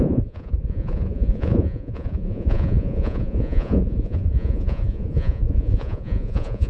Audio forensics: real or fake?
fake